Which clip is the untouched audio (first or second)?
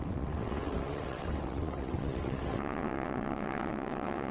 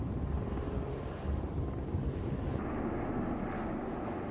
second